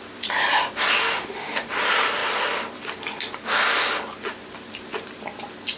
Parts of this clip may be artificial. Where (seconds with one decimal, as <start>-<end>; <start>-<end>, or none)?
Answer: 1.0-1.7